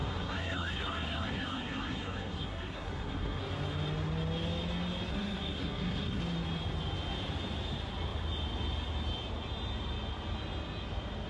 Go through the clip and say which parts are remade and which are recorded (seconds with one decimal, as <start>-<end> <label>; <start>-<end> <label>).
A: 0.0-3.4 remade; 3.4-5.1 recorded; 5.1-6.2 remade; 6.2-11.3 recorded